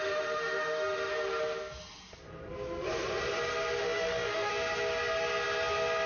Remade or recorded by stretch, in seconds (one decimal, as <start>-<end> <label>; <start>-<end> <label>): 0.0-1.1 remade; 1.1-3.8 recorded; 3.8-4.5 remade; 4.5-6.1 recorded